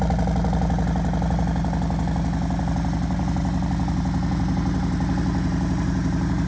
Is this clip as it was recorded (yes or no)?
yes